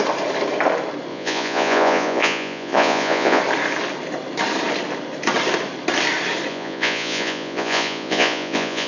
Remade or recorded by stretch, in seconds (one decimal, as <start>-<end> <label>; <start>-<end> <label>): 0.0-1.1 recorded; 1.1-3.4 remade; 3.4-6.5 recorded; 6.5-8.9 remade

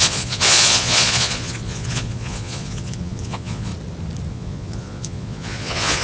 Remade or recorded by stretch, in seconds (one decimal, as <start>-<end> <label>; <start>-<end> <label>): 0.0-3.7 remade; 3.7-4.3 recorded; 4.3-6.0 remade

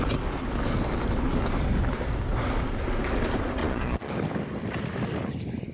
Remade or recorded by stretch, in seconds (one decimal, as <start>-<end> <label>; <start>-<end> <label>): 0.0-3.6 recorded; 3.6-4.1 remade; 4.1-5.7 recorded